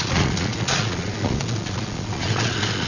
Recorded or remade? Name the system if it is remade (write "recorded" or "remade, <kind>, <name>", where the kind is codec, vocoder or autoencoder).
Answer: remade, vocoder, Vocos